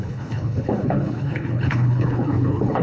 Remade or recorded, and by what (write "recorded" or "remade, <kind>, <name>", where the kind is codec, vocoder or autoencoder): remade, codec, HILCodec